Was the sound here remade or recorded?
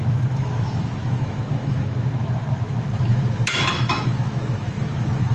remade